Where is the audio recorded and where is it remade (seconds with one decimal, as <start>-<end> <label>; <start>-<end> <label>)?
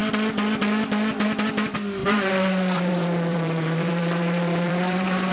0.0-2.0 recorded; 2.0-5.3 remade